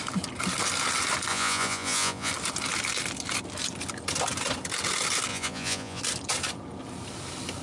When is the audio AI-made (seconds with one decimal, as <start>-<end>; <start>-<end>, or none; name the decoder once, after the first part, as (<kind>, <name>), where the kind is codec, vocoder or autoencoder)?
1.3-2.3 (vocoder, Vocos); 5.3-6.0